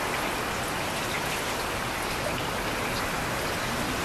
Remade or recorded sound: recorded